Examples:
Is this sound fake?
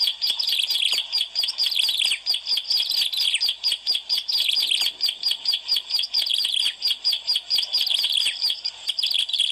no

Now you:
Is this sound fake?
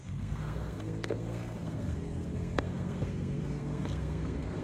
yes